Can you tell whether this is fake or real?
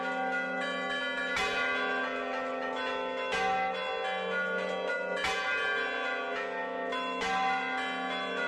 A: real